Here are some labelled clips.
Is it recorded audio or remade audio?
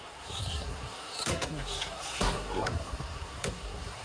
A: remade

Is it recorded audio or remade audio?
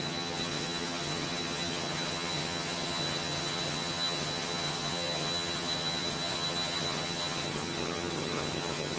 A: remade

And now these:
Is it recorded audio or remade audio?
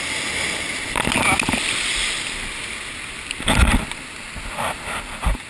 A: recorded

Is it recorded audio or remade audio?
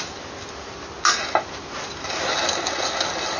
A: recorded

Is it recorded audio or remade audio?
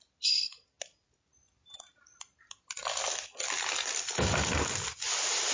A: recorded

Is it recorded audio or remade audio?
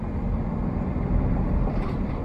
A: recorded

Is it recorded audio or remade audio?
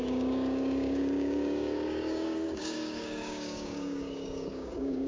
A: remade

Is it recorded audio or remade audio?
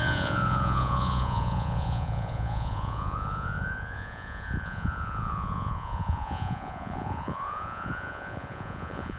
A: remade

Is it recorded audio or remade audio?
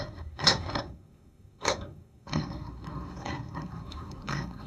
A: remade